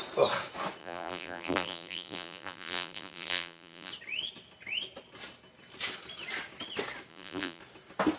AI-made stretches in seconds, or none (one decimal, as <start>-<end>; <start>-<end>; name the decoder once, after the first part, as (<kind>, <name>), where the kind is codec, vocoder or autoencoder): 0.8-3.9 (vocoder, BigVGAN v2); 7.1-7.6